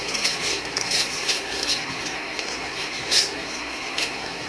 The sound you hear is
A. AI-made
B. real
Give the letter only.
A